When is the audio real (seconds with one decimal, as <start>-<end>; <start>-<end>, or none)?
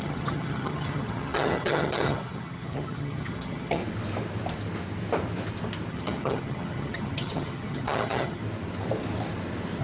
3.8-5.9; 8.4-9.8